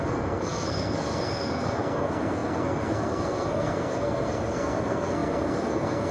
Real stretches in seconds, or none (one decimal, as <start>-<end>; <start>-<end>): none